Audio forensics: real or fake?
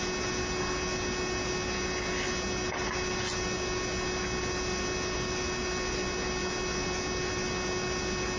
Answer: real